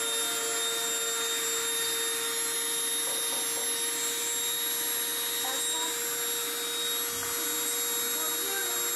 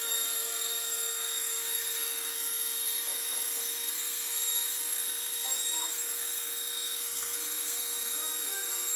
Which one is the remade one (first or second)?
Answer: second